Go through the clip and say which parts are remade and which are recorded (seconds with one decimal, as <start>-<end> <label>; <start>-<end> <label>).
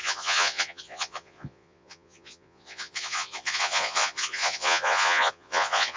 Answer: 0.0-6.0 remade